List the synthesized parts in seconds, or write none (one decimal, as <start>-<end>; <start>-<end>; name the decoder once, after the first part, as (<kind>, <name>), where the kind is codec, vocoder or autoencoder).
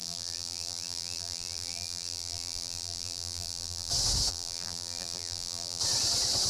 0.0-3.9 (vocoder, BigVGAN v2); 4.3-5.8